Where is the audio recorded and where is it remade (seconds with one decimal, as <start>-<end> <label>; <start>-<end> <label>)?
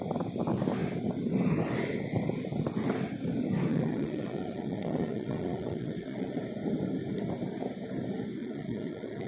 0.0-3.7 recorded; 3.7-6.4 remade; 6.4-8.4 recorded; 8.4-9.3 remade